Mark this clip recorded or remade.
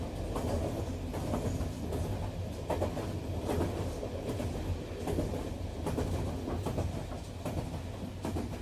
recorded